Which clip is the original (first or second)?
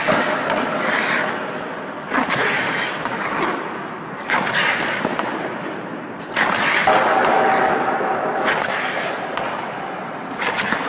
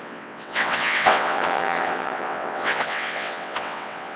first